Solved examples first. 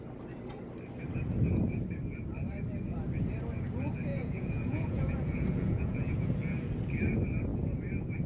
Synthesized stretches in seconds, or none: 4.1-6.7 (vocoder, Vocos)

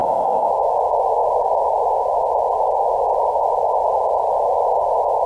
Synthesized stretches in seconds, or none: 0.0-0.5 (autoencoder, DAC-VAE)

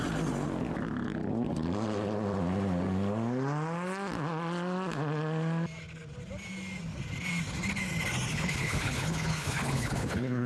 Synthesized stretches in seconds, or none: 8.3-10.5 (codec, HILCodec)

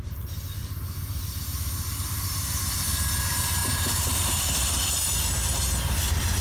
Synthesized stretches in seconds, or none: 0.6-2.5 (vocoder, BigVGAN v2); 3.6-4.9

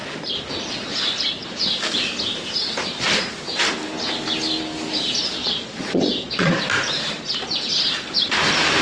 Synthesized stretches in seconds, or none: 5.4-6.6 (vocoder, Vocos)

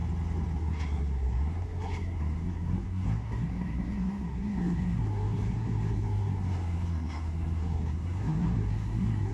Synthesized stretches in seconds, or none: 0.6-9.3 (codec, SNAC)